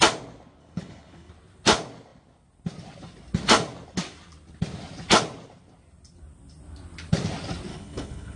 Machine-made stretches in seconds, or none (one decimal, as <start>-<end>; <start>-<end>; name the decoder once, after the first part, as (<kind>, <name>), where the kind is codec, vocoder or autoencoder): 0.6-1.3 (codec, HILCodec); 7.7-8.4